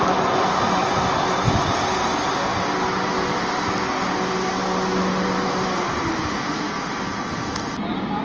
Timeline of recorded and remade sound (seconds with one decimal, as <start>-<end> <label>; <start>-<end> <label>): 0.0-8.2 recorded